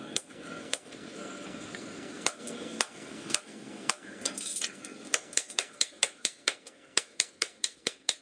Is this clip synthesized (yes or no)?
yes